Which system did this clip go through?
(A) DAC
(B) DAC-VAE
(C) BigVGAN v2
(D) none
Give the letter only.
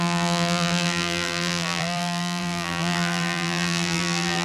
C